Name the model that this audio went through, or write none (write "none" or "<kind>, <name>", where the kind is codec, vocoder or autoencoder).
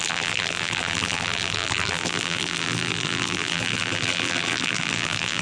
vocoder, BigVGAN v2